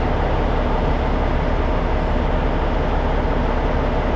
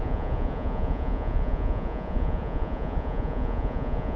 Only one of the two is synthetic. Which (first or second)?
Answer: second